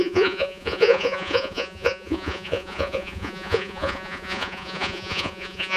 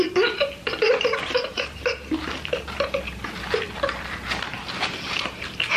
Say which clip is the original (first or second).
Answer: second